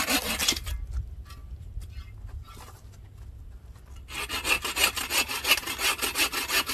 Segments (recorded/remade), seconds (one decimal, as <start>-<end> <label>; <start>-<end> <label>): 0.0-6.7 recorded